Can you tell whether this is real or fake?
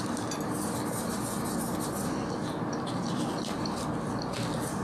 real